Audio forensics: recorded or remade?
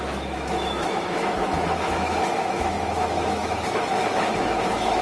remade